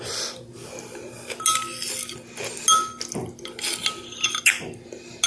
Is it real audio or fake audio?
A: real